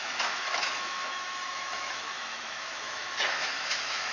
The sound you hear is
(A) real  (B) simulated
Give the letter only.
B